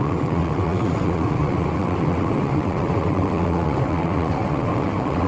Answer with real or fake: fake